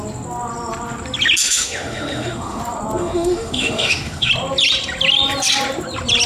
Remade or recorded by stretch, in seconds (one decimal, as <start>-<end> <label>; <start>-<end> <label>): 0.0-1.4 recorded; 1.4-2.6 remade; 2.6-3.0 recorded; 3.0-4.3 remade; 4.3-6.3 recorded